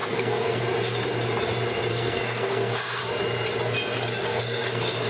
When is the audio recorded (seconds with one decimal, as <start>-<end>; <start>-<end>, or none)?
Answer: 0.6-1.9; 3.0-4.3